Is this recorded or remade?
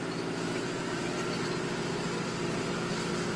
recorded